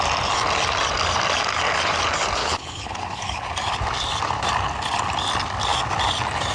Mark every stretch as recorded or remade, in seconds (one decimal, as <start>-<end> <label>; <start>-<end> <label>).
0.0-2.4 recorded; 2.4-3.5 remade; 3.5-6.5 recorded